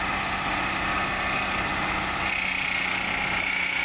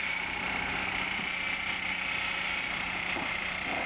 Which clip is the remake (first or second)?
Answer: second